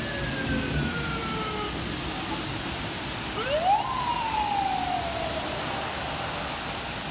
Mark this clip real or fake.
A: real